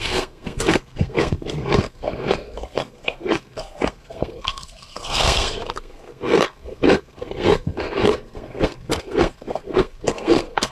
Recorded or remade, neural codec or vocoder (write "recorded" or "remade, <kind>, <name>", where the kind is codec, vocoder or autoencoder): remade, codec, SNAC